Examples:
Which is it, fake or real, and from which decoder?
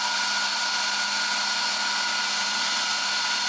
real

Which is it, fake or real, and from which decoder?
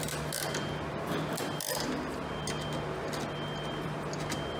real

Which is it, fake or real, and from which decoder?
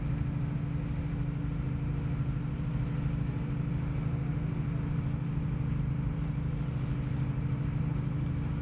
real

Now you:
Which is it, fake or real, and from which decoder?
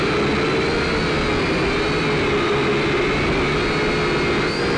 real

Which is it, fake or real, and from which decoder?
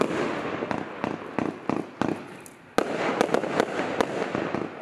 real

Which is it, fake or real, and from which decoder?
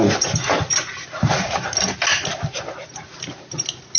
real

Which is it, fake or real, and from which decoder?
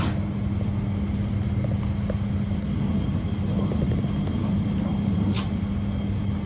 real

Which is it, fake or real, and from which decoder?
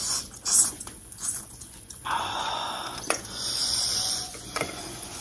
fake, vocoder, Vocos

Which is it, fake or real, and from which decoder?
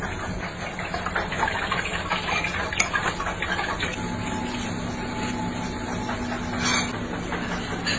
real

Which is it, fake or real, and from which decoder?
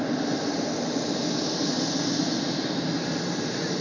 real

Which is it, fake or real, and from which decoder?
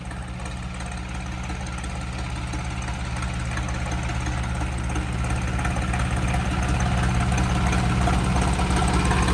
real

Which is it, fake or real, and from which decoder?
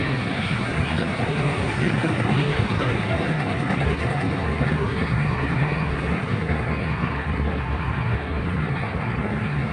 fake, codec, SNAC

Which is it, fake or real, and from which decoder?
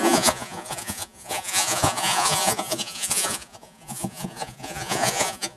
fake, vocoder, Vocos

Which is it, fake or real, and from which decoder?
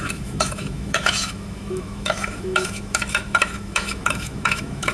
fake, autoencoder, DAC-VAE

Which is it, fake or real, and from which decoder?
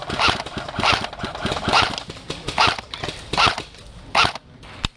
real